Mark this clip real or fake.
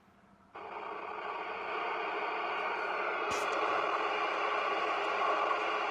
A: real